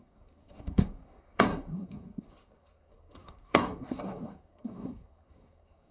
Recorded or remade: remade